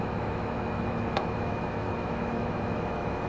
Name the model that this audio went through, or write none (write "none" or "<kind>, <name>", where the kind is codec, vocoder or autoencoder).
autoencoder, DAC-VAE